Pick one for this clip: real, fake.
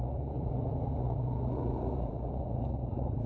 fake